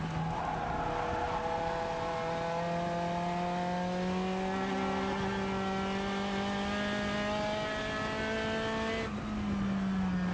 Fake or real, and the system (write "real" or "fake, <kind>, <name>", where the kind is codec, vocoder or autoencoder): real